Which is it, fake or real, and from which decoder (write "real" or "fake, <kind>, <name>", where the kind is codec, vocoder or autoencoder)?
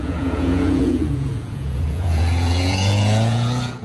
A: fake, vocoder, Vocos